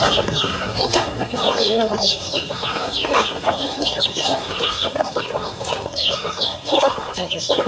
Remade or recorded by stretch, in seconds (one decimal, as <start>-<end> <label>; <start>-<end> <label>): 0.0-7.7 remade